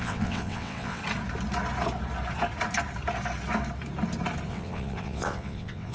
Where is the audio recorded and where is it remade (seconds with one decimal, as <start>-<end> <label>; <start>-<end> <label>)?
0.0-1.0 remade; 1.0-4.5 recorded; 4.5-5.9 remade